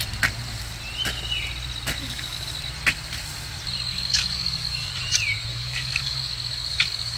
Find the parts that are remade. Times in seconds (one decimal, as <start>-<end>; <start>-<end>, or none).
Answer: 2.0-2.5; 3.9-4.9; 5.5-7.2